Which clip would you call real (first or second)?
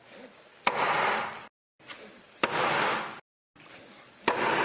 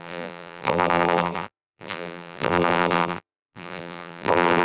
first